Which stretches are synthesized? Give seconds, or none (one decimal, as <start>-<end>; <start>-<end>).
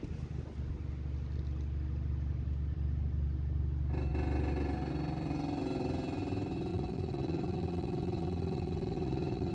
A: 6.7-9.5